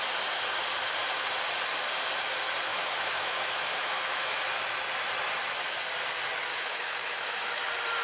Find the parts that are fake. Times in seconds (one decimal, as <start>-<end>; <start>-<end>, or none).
2.7-4.4; 6.5-7.6